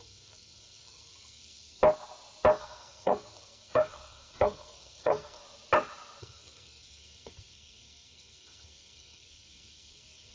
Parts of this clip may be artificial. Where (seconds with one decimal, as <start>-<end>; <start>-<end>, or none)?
0.0-1.8; 2.6-5.4; 6.2-10.3